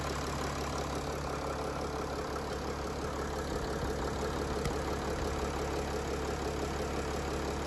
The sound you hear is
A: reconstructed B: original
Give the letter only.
B